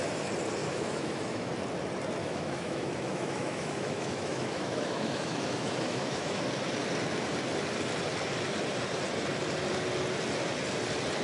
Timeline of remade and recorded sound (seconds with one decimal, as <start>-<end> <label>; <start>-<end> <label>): 0.0-0.6 recorded; 0.6-1.5 remade; 1.5-2.2 recorded; 2.2-6.4 remade; 6.4-11.2 recorded